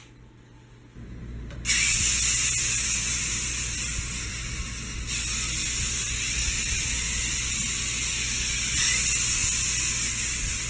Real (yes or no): yes